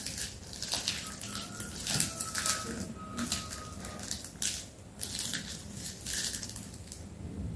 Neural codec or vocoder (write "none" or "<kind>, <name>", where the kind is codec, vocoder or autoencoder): none